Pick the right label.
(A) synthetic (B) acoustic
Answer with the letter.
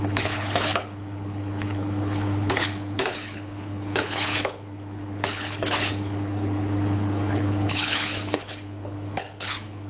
A